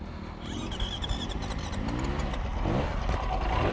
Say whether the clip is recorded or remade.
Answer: recorded